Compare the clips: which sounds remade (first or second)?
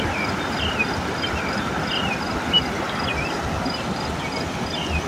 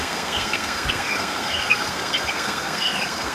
second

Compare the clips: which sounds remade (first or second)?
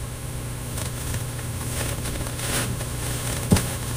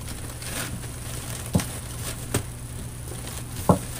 first